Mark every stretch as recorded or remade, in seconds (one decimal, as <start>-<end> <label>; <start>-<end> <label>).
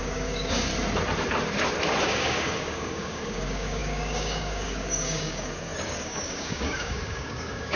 0.0-0.7 remade; 0.7-2.0 recorded; 2.0-7.8 remade